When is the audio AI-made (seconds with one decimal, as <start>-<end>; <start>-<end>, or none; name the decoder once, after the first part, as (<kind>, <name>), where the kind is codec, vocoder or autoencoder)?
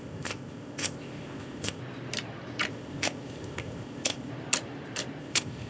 0.0-1.8 (codec, ZipCodec); 2.7-4.3; 5.2-5.7